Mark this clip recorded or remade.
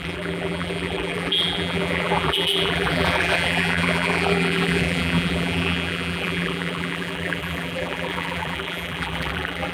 remade